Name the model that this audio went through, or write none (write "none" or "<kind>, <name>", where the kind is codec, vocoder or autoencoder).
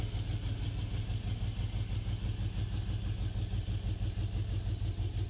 none